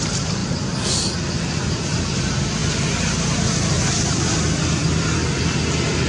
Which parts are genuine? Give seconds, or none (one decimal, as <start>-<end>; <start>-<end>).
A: 0.0-6.1

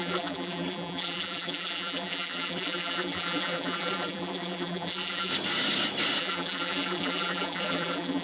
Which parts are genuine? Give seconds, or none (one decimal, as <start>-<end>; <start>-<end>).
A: 5.3-6.2

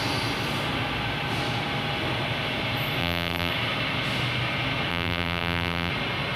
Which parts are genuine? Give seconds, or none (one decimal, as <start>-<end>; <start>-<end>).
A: 0.0-3.0; 3.5-4.9; 5.9-6.4

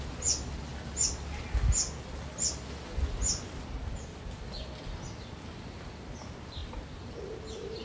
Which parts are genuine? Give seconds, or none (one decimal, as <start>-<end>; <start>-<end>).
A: 0.0-7.8

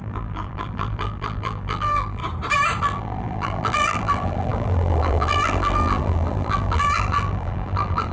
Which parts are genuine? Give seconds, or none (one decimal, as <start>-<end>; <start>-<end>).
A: 2.2-2.8

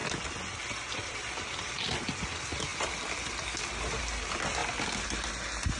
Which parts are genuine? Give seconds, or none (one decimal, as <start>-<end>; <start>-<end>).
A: 1.7-2.7; 4.0-4.6; 5.3-5.8